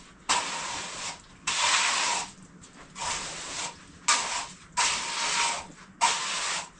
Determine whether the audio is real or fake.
real